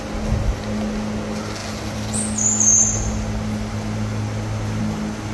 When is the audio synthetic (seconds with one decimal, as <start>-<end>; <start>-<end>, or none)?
none